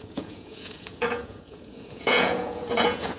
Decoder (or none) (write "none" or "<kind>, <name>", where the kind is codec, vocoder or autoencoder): vocoder, Vocos